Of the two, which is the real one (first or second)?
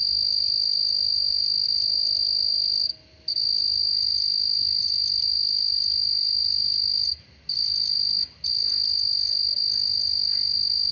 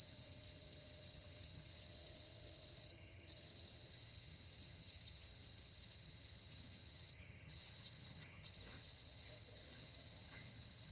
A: first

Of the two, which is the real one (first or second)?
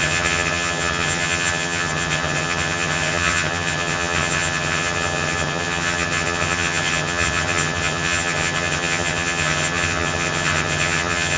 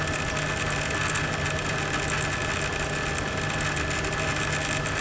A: second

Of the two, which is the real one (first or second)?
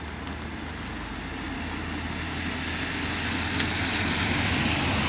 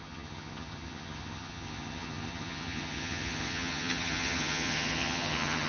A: first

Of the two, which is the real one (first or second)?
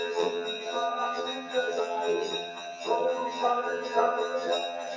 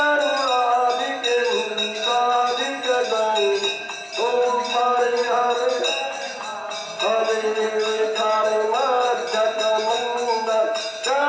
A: second